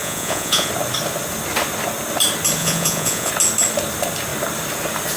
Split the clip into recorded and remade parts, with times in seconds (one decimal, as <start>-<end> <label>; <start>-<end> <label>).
0.0-0.7 remade; 0.7-2.6 recorded; 2.6-3.3 remade; 3.3-5.2 recorded